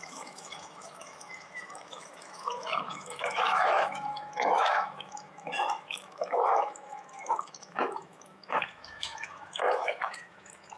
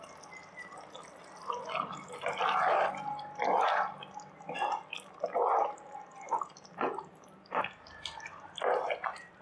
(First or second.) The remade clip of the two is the first